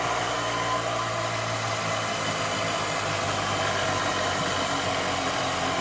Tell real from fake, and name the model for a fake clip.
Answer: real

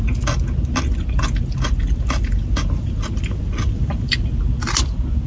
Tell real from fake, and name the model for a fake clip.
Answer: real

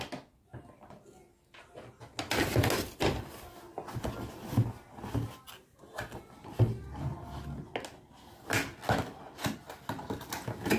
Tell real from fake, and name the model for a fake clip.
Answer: real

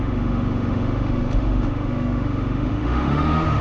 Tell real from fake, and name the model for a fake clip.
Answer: fake, autoencoder, DAC-VAE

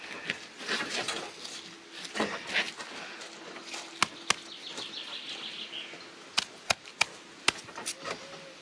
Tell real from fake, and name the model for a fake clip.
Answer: real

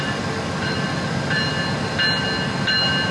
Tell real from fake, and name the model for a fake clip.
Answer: real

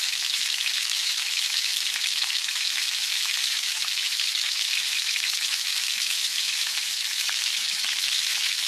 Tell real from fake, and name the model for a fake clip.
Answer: fake, autoencoder, DAC-VAE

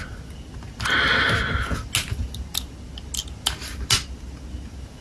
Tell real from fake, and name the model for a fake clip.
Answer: real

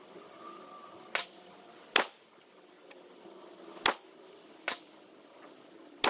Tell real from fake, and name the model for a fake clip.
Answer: real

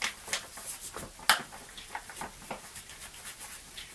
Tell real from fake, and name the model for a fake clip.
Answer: real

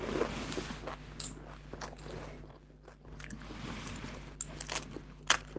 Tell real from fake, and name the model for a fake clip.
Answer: real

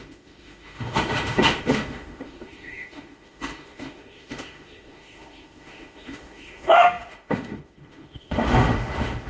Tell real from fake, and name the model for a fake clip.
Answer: fake, autoencoder, DAC-VAE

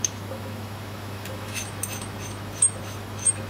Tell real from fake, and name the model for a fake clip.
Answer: fake, autoencoder, DAC-VAE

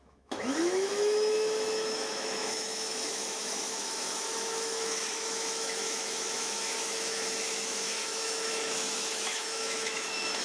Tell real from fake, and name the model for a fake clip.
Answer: fake, autoencoder, DAC-VAE